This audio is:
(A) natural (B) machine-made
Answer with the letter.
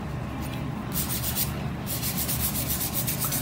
A